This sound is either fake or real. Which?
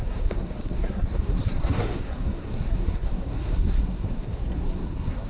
fake